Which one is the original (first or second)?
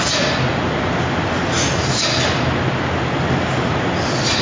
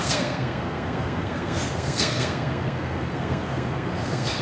first